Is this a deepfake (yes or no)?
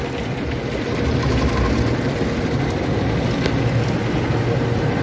no